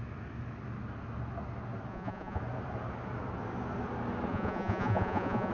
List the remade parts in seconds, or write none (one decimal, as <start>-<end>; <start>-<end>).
1.9-2.4; 4.3-5.5